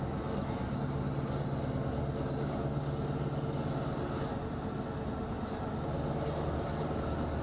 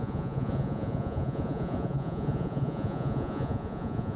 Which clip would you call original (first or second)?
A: first